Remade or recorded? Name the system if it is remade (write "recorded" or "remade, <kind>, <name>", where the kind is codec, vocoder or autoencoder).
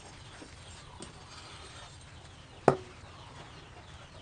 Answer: recorded